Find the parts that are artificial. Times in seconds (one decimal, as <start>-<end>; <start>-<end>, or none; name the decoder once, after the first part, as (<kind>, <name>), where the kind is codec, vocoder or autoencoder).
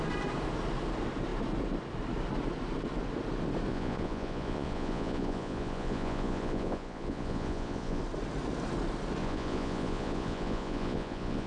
3.7-8.0 (vocoder, Vocos); 9.2-11.5